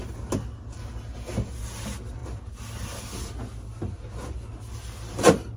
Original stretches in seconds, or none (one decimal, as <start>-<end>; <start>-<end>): 0.0-5.6